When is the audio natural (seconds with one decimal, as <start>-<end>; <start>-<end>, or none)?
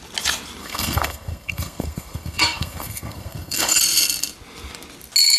0.0-0.6; 3.8-5.4